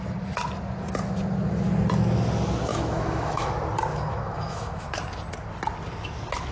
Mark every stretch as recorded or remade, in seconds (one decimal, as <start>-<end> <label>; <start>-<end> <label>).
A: 0.0-2.7 recorded; 2.7-3.5 remade; 3.5-3.9 recorded; 3.9-4.9 remade; 4.9-6.5 recorded